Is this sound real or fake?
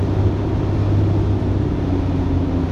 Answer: real